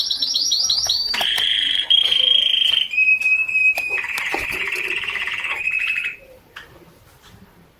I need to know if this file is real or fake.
fake